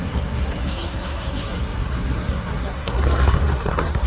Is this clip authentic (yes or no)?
no